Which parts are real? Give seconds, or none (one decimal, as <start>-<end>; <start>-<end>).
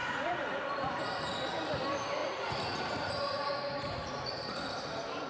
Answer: 1.0-2.2; 4.3-5.3